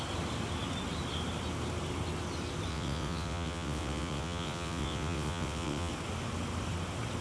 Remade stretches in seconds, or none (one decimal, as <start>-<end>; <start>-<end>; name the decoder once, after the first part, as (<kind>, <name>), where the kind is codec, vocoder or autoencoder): 2.7-5.9 (vocoder, WaveNeXt)